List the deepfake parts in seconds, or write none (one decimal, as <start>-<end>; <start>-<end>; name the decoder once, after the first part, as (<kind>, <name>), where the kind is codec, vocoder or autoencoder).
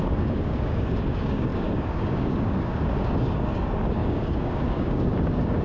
0.0-5.6 (codec, DAC)